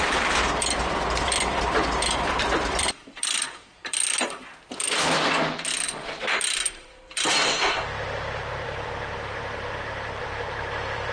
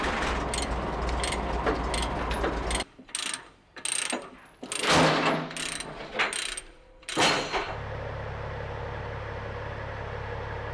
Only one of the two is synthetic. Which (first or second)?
first